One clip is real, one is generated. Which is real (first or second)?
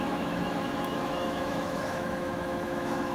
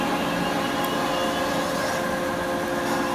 second